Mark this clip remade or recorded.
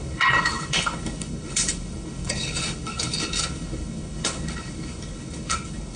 remade